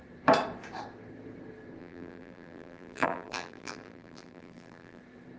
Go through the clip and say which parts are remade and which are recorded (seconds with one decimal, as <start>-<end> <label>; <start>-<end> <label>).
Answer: 0.0-1.8 recorded; 1.8-5.0 remade; 5.0-5.4 recorded